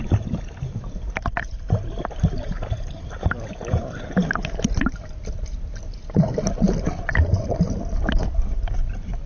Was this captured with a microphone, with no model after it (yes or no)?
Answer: no